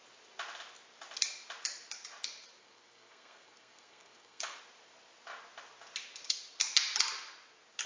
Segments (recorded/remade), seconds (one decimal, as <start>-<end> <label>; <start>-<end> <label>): 0.0-2.6 recorded; 2.6-4.6 remade; 4.6-7.9 recorded

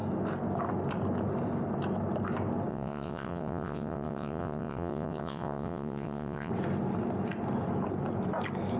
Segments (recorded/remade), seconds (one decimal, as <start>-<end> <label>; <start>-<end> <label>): 0.0-2.7 recorded; 2.7-6.5 remade; 6.5-8.8 recorded

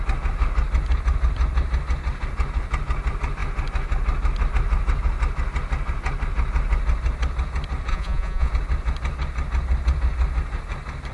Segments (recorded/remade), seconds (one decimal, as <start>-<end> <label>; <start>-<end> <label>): 0.0-7.9 recorded; 7.9-8.5 remade; 8.5-11.1 recorded

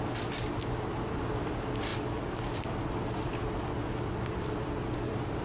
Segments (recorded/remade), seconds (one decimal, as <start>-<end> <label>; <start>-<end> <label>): 0.0-5.4 recorded